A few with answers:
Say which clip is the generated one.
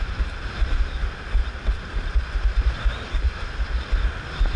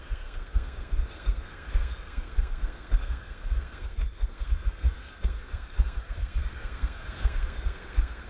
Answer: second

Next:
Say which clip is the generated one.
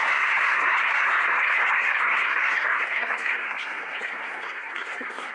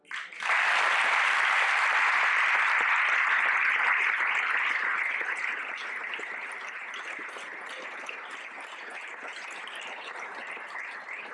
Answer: first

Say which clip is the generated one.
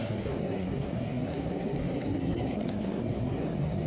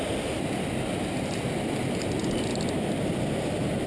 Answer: first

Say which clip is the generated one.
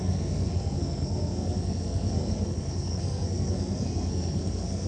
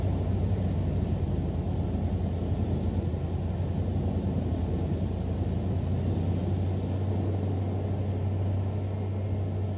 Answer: first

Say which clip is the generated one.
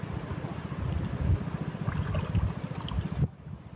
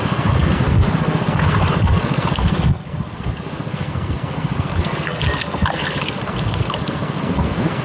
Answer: second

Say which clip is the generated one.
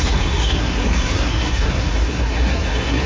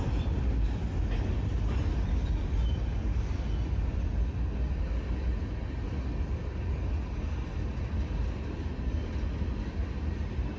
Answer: first